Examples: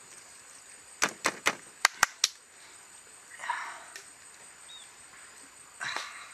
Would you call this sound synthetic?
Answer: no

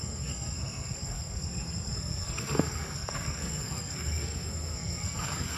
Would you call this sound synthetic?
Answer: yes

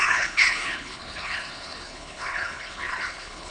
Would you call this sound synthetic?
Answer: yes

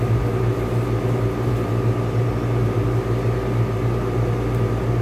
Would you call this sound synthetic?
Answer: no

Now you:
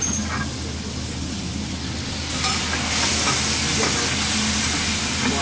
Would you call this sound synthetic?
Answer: no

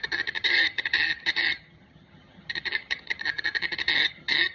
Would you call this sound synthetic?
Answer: yes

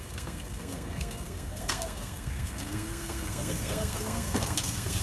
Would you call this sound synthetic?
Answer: yes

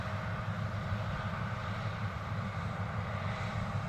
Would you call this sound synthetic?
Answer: no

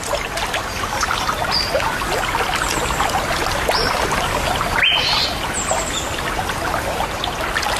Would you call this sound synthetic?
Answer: no